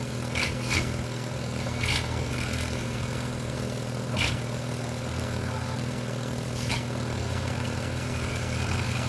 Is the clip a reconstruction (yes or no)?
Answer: yes